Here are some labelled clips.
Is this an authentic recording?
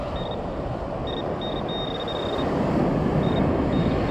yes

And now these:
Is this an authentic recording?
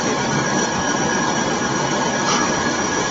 yes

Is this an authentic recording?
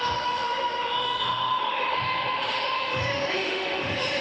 no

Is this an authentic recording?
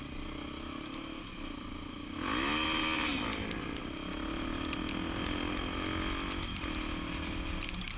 yes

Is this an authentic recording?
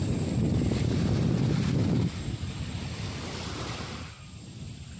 yes